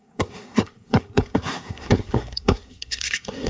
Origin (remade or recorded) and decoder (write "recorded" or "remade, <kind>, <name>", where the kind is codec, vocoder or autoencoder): remade, codec, SNAC